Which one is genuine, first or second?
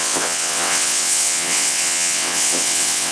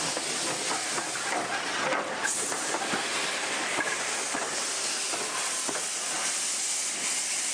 second